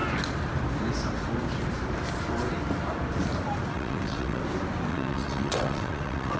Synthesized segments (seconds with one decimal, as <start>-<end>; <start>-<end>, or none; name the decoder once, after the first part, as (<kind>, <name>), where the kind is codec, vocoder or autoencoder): 3.7-4.4 (vocoder, WaveNeXt); 4.9-6.4